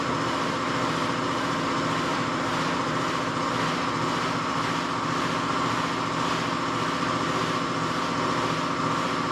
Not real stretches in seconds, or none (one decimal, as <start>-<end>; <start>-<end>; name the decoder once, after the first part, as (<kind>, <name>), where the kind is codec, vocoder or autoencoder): 1.0-1.7 (vocoder, BigVGAN v2); 2.1-3.5